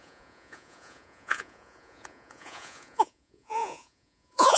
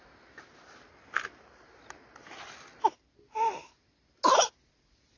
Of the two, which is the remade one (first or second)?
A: first